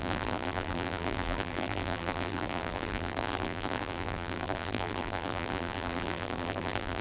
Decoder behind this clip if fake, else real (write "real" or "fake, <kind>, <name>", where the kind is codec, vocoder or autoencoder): fake, vocoder, BigVGAN v2